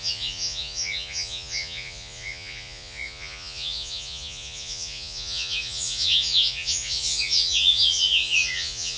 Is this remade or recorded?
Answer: remade